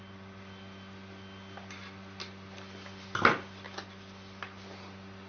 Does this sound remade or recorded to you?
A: recorded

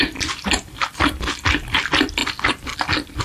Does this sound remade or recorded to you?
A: recorded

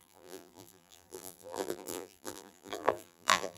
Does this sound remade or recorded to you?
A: remade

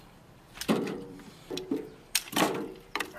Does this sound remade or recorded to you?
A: remade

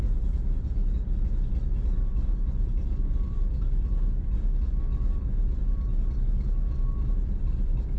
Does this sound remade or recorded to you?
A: remade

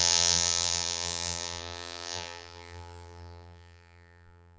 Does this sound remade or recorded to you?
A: remade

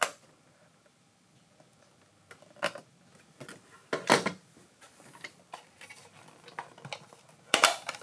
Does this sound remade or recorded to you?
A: remade